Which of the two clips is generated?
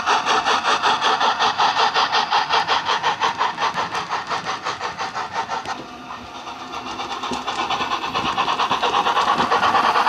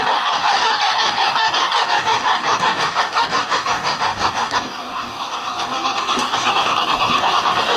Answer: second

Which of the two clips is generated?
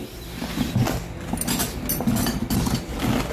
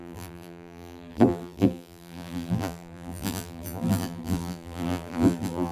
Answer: second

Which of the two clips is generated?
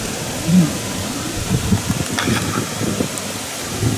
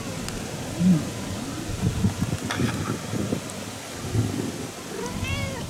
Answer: first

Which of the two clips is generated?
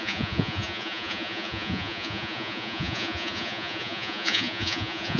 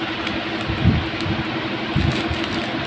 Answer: first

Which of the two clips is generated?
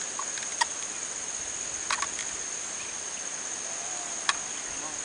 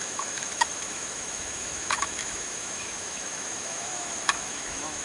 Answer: second